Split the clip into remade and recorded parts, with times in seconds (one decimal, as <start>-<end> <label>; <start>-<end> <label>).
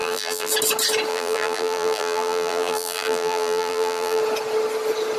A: 0.0-0.5 remade; 0.5-1.1 recorded; 1.1-4.2 remade; 4.2-5.2 recorded